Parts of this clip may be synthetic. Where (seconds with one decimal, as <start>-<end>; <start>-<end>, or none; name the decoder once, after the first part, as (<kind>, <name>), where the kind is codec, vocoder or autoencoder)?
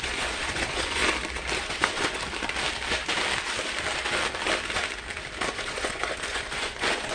0.0-1.0 (vocoder, Vocos); 1.6-2.2; 5.5-7.1